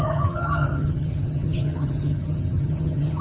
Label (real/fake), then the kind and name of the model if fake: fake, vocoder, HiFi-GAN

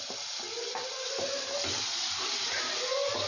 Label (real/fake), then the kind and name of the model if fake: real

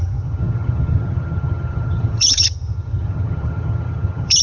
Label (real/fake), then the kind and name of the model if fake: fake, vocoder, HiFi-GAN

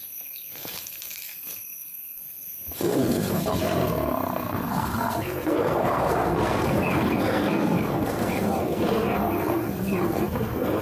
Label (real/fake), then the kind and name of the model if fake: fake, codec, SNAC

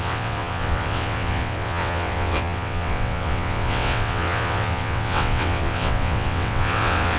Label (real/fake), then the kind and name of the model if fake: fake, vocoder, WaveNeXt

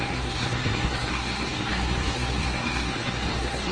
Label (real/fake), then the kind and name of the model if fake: fake, codec, SNAC